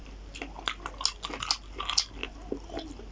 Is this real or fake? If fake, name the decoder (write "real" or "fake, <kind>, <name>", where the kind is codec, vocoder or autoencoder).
real